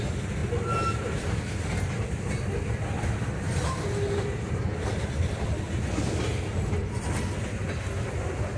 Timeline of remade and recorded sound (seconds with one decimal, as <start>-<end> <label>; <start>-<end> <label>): 0.0-8.6 recorded